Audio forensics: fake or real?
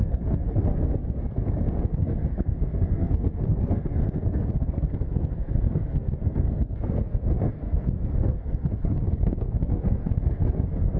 fake